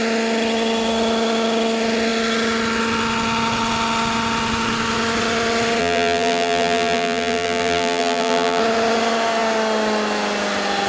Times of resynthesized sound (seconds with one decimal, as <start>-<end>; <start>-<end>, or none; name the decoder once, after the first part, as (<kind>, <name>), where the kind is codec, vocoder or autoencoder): 5.8-8.6 (vocoder, BigVGAN v2)